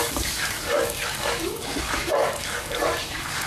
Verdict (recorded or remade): remade